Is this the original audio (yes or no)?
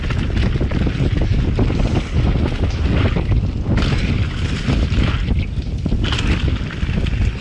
yes